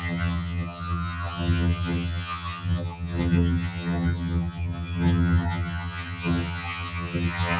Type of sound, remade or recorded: remade